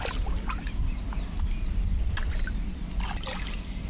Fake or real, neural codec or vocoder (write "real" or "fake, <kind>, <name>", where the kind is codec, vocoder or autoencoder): real